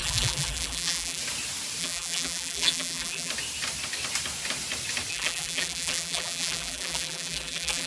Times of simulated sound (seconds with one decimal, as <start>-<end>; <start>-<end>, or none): 0.0-1.2; 1.8-3.3; 5.1-7.9